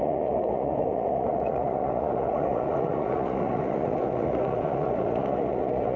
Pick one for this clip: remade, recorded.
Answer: remade